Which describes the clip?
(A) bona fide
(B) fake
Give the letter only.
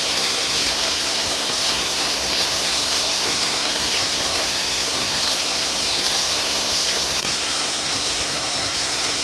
B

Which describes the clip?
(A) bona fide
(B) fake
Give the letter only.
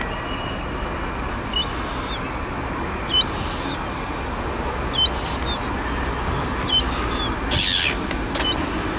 A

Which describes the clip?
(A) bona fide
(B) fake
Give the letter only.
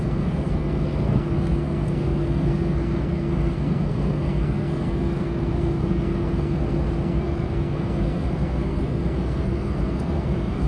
B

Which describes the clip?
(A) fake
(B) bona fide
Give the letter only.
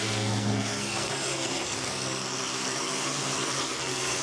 A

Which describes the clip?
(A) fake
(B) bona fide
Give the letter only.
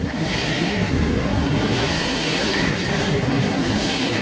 A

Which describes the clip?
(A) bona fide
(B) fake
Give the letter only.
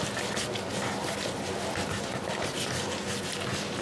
A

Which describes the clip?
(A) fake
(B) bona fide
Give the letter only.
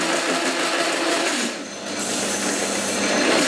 B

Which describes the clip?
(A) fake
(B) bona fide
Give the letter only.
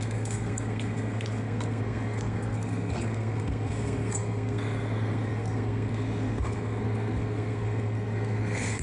A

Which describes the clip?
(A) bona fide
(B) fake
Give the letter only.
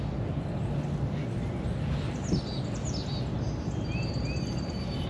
A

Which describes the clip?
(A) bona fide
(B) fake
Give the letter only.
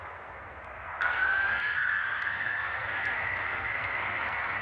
B